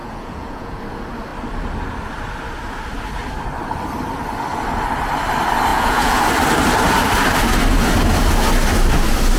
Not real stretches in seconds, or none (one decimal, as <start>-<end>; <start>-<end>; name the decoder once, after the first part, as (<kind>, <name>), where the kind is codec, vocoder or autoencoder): 0.0-0.8 (vocoder, Vocos); 5.7-6.2